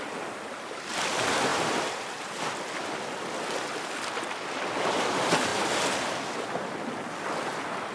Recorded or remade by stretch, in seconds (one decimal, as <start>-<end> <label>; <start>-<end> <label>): 0.0-7.9 recorded